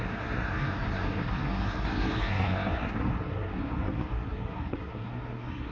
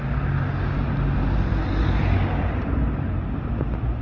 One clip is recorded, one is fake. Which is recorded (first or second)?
second